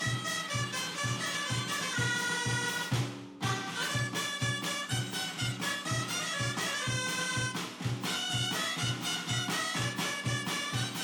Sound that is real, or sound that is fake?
real